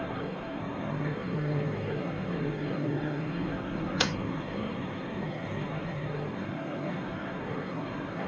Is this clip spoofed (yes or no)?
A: yes